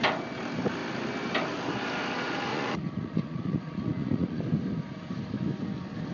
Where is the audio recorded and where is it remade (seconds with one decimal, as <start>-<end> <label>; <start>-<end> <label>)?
0.0-2.5 recorded; 2.5-4.4 remade; 4.4-6.1 recorded